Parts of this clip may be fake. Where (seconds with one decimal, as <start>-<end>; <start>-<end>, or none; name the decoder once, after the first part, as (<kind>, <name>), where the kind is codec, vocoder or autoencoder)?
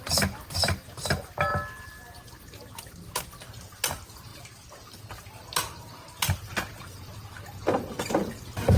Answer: 4.3-5.9 (vocoder, BigVGAN v2)